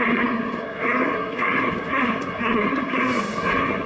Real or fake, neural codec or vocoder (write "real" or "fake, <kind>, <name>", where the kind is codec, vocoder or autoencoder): fake, codec, SNAC